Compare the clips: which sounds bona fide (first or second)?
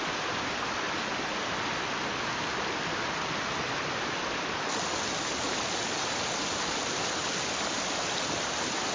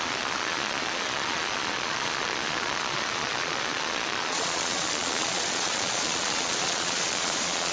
first